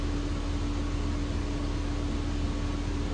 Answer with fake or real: real